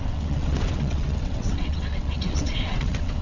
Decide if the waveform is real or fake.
fake